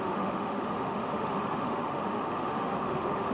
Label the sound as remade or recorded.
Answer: remade